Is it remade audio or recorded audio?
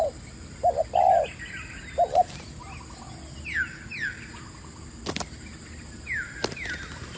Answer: recorded